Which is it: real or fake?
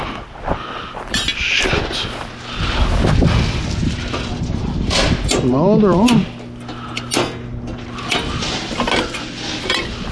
real